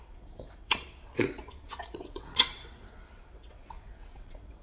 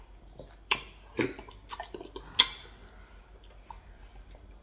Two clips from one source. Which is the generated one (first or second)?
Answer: first